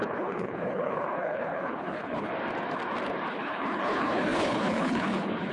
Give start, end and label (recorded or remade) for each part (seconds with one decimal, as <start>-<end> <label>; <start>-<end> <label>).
0.0-2.3 remade; 2.3-3.3 recorded; 3.3-5.5 remade